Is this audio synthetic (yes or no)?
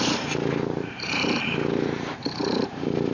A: yes